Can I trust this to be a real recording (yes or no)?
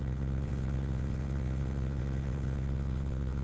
no